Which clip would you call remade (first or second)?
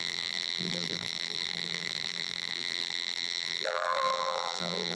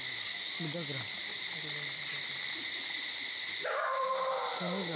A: first